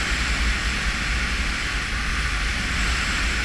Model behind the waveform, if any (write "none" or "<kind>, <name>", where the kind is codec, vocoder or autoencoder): none